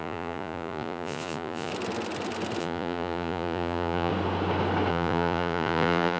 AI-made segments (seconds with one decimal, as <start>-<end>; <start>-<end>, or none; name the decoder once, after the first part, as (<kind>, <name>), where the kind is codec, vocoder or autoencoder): 0.0-1.7 (vocoder, Vocos); 2.6-4.1; 4.9-6.2